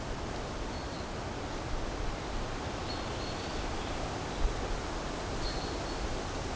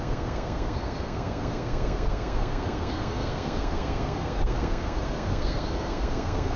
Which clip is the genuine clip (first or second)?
first